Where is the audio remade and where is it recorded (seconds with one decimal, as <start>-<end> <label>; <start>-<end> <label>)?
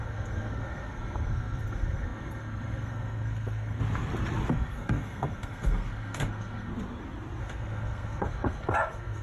0.0-3.8 remade; 3.8-4.5 recorded; 4.5-6.7 remade; 6.7-7.4 recorded; 7.4-9.2 remade